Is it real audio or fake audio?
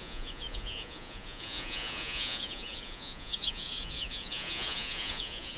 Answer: fake